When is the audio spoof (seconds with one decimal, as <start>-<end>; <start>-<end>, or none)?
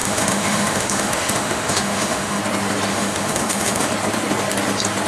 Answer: 0.0-2.4; 2.9-3.9